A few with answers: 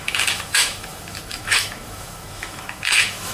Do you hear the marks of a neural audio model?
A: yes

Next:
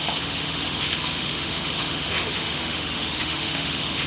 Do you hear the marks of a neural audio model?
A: yes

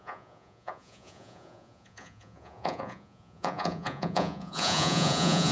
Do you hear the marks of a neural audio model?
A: yes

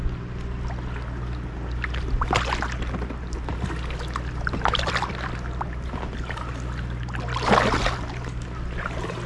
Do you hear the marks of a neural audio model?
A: no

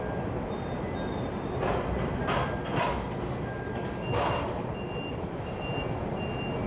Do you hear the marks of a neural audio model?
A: no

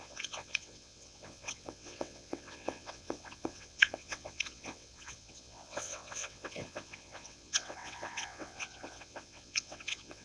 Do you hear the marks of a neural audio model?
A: yes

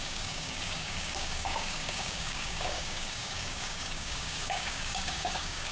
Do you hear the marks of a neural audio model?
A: yes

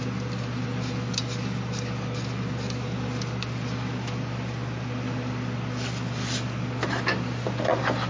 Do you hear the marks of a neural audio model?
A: no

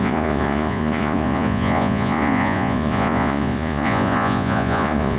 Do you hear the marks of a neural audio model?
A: yes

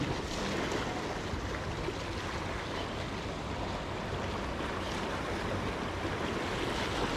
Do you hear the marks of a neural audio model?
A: no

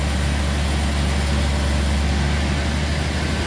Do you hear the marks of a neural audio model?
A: no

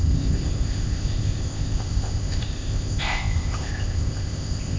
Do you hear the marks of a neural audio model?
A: yes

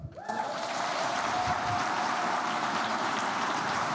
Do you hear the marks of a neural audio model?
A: yes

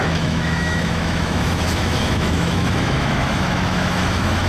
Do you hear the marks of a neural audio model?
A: yes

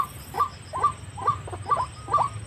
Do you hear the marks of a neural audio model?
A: no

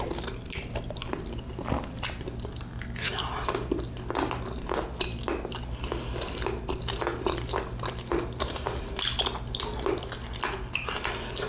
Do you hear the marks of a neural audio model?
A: no